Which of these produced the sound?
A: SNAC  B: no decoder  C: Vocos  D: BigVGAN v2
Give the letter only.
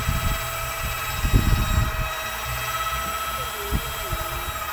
B